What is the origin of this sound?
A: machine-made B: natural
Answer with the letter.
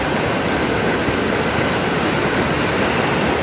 B